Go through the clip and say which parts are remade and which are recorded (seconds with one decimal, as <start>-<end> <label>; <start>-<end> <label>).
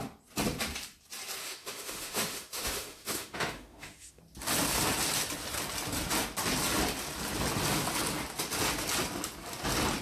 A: 0.0-1.4 recorded; 1.4-4.2 remade; 4.2-10.0 recorded